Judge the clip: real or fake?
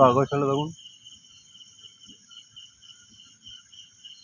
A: real